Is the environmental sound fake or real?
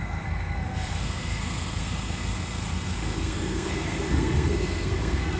fake